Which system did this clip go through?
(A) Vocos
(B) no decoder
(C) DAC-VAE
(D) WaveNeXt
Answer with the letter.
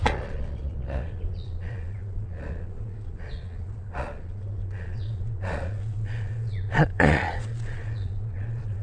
A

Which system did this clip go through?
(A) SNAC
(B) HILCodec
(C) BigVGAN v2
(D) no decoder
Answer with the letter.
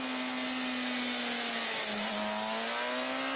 D